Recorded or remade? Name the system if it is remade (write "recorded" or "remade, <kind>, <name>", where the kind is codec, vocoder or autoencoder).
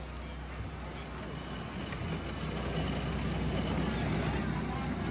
recorded